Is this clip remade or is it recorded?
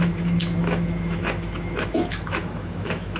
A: remade